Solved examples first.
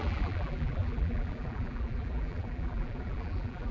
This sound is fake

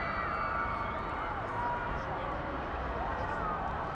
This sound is real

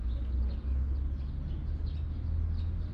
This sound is real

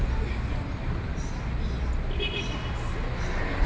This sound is real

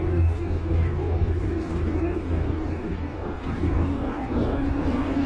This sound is fake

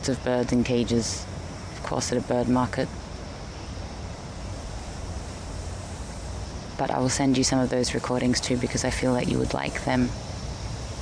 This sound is fake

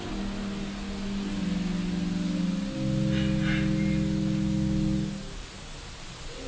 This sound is real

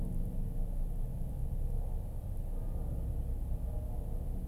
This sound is real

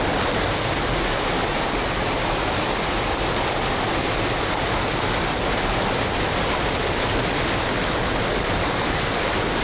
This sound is real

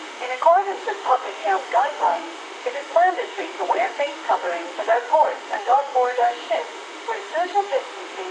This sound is fake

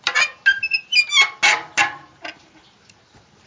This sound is real